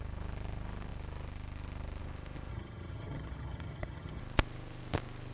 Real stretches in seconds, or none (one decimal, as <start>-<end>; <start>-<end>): 0.0-2.5; 4.2-5.3